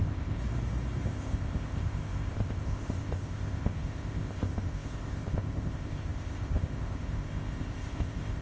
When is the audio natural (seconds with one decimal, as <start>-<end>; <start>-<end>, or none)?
0.4-1.1